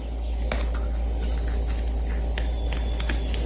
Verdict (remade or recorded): recorded